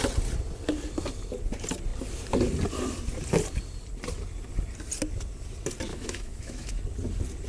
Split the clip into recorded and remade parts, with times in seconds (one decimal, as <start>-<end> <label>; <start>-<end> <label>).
0.0-5.9 recorded; 5.9-6.7 remade; 6.7-7.5 recorded